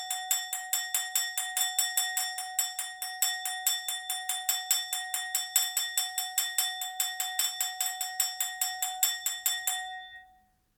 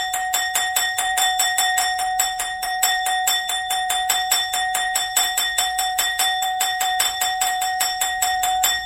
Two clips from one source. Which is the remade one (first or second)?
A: second